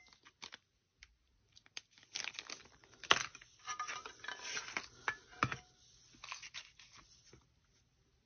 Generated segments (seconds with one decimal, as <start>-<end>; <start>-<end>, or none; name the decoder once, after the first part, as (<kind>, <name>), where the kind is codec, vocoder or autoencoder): none